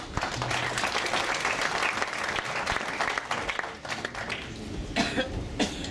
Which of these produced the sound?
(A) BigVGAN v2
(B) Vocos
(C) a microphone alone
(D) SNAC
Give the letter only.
C